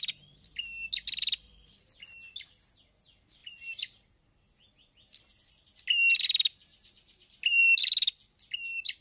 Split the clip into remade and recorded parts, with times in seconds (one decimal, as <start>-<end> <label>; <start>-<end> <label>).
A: 0.0-9.0 recorded